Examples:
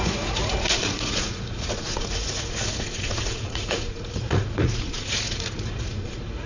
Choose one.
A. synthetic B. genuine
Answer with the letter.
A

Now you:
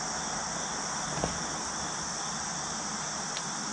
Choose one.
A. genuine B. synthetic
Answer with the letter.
A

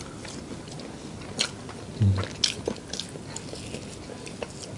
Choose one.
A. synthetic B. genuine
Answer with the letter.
B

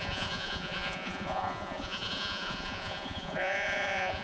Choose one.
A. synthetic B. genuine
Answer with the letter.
A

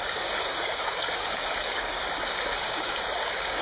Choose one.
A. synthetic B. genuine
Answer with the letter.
A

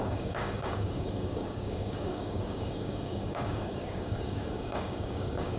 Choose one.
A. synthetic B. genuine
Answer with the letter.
A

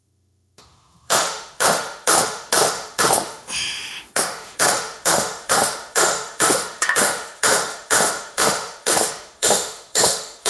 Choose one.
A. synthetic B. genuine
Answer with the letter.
A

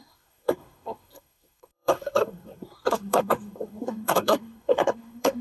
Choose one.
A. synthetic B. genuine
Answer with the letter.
A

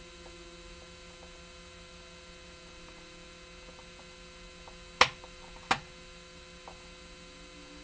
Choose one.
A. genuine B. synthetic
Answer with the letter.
A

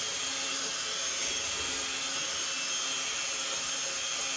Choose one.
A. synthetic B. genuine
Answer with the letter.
B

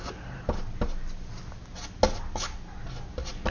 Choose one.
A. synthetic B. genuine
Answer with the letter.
B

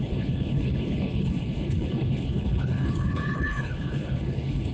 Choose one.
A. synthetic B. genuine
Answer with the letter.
A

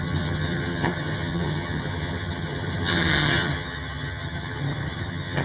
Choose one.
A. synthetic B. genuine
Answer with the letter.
A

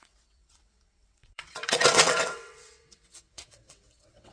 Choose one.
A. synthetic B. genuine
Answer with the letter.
A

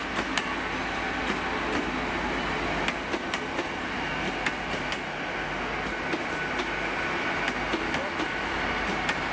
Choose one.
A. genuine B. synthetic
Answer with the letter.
A